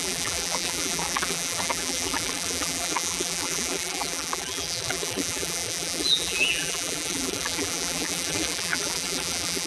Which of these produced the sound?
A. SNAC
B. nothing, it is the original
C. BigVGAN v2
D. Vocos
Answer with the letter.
C